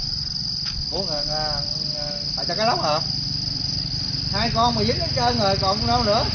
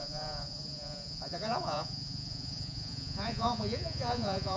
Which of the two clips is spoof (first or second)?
second